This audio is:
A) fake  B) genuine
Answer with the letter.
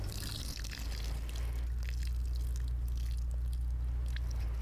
B